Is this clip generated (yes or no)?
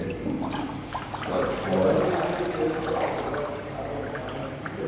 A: no